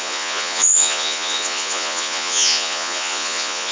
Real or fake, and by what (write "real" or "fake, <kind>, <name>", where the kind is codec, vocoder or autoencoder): fake, vocoder, Vocos